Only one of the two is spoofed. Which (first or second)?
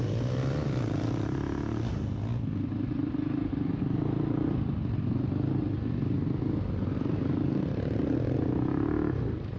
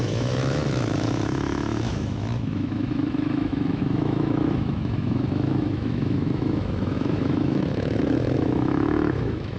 second